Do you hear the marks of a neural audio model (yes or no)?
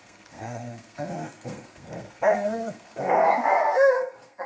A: yes